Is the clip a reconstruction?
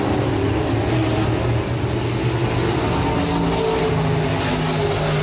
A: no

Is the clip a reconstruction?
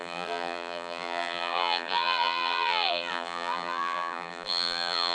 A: yes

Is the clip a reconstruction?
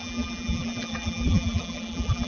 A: yes